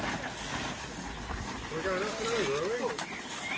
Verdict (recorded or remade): recorded